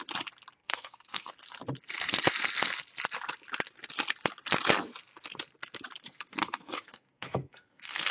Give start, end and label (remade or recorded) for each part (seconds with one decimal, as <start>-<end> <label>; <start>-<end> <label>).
0.0-0.6 recorded; 0.6-1.3 remade; 1.3-6.4 recorded; 6.4-8.1 remade